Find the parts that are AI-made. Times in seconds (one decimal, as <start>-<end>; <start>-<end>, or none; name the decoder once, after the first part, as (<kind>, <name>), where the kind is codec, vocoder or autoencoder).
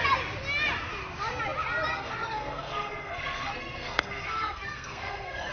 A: 1.9-5.5 (codec, SNAC)